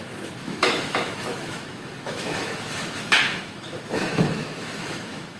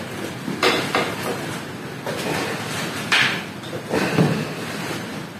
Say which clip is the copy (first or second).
first